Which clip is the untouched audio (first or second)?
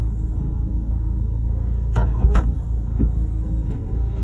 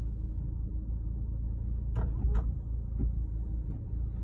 second